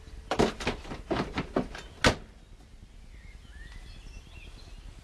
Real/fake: real